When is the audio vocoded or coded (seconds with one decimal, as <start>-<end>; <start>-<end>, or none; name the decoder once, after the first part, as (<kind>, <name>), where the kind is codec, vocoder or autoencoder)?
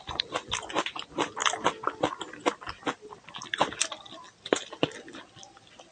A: none